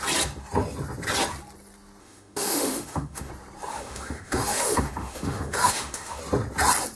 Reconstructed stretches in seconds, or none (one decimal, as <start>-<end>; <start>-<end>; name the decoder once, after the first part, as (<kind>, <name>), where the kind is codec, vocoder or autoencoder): 2.0-3.3 (autoencoder, DAC-VAE); 3.7-6.2